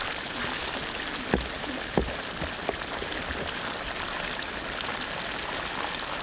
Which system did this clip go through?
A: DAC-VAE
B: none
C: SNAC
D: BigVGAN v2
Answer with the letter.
B